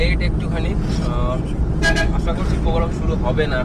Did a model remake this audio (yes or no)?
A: no